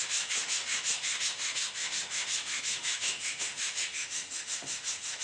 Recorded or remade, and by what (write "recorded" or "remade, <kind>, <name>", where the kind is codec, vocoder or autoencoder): remade, autoencoder, DAC-VAE